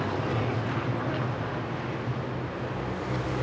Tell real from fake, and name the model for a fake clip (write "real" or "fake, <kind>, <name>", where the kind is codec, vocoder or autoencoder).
real